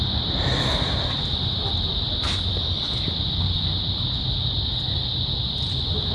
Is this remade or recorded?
recorded